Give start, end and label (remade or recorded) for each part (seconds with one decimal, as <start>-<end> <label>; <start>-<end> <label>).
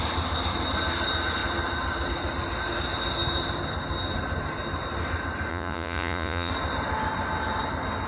0.0-5.5 recorded; 5.5-6.5 remade; 6.5-8.1 recorded